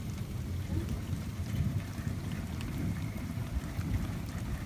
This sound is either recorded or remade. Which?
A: remade